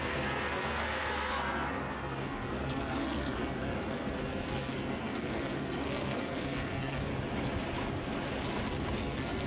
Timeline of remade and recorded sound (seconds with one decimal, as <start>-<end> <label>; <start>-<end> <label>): 0.0-7.1 remade; 7.1-9.0 recorded; 9.0-9.5 remade